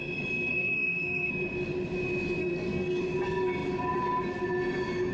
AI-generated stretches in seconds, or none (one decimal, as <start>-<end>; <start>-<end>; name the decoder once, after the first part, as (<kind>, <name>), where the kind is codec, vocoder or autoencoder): 0.5-1.3 (codec, SNAC); 2.4-3.0